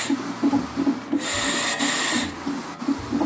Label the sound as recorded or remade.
recorded